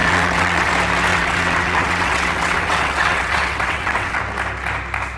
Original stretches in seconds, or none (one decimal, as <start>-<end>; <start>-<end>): 0.7-1.1; 4.2-5.2